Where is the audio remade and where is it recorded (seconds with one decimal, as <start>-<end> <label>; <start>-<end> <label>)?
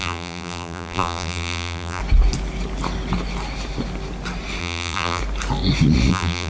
0.0-2.0 remade; 2.0-4.6 recorded; 4.6-5.2 remade; 5.2-6.1 recorded; 6.1-6.5 remade